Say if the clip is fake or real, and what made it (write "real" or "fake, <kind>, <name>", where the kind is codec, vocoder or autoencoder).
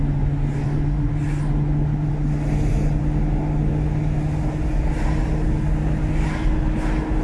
real